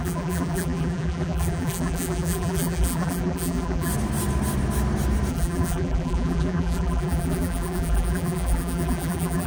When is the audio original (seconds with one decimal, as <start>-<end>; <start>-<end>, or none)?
3.9-5.3